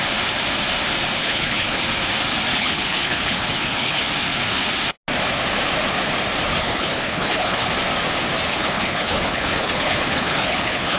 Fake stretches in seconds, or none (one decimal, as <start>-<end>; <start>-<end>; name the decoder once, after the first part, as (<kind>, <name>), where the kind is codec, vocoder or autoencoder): 1.2-1.8 (codec, HILCodec); 2.5-4.0; 6.5-7.7; 8.5-11.0